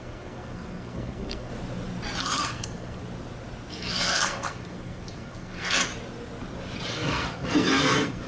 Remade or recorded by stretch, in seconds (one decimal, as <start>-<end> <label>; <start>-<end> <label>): 0.0-1.5 remade; 1.5-2.2 recorded; 2.2-3.0 remade; 3.0-3.7 recorded; 3.7-5.9 remade; 5.9-6.9 recorded; 6.9-8.3 remade